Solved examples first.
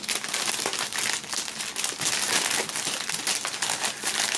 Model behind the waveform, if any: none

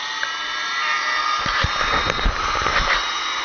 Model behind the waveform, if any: none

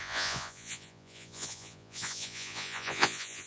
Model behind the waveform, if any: vocoder, Vocos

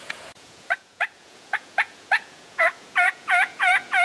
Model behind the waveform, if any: vocoder, Vocos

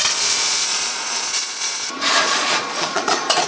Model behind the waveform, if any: vocoder, Vocos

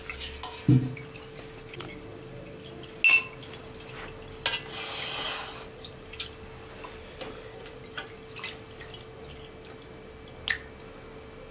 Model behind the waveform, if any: none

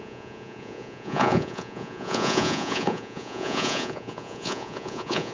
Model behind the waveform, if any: vocoder, Vocos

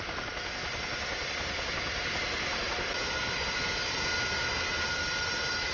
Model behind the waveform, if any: none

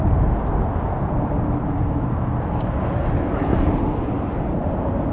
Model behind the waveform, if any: none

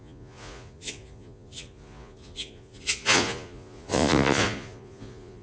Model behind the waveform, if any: vocoder, Vocos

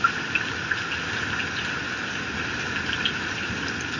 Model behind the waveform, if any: none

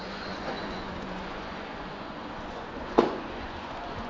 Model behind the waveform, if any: vocoder, Vocos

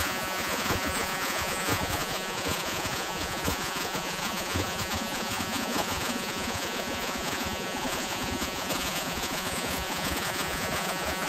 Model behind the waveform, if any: vocoder, Vocos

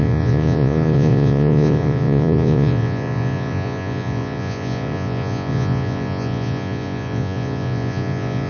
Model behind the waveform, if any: vocoder, Vocos